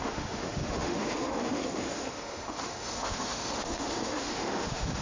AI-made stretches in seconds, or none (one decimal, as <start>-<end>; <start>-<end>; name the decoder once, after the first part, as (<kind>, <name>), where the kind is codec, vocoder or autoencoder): 0.0-5.0 (autoencoder, DAC-VAE)